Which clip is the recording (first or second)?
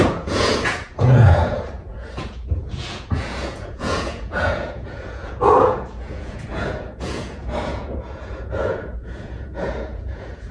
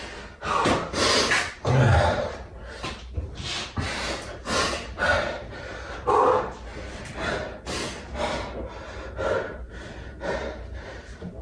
second